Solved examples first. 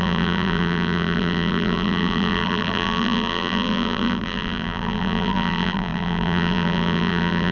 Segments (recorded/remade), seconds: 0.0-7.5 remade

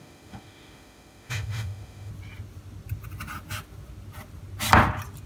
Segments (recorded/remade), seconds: 0.0-2.1 remade; 2.1-5.3 recorded

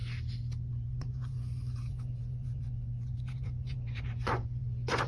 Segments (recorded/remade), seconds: 0.0-0.7 recorded; 0.7-5.1 remade

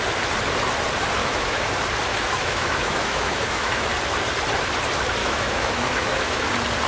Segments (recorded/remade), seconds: 0.0-1.2 recorded; 1.2-1.7 remade; 1.7-2.1 recorded; 2.1-3.9 remade; 3.9-5.2 recorded; 5.2-6.5 remade; 6.5-6.9 recorded

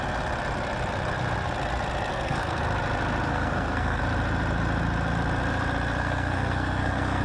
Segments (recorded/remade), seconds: 0.0-2.1 recorded; 2.1-2.6 remade; 2.6-3.3 recorded; 3.3-4.0 remade; 4.0-6.0 recorded; 6.0-7.2 remade

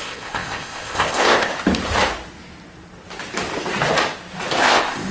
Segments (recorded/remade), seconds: 0.0-1.5 remade; 1.5-4.6 recorded; 4.6-5.1 remade

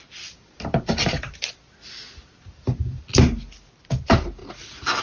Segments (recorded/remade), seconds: 0.0-5.0 recorded

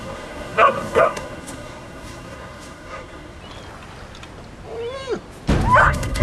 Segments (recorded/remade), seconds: 0.0-3.4 remade; 3.4-5.8 recorded; 5.8-6.2 remade